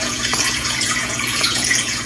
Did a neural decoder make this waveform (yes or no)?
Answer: yes